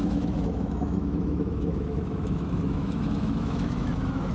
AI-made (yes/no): yes